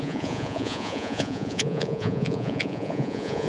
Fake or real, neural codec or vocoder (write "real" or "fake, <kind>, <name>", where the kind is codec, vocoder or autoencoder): fake, vocoder, Vocos